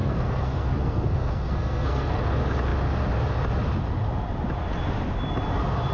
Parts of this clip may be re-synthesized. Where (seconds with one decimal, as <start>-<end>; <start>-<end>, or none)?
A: 0.0-2.2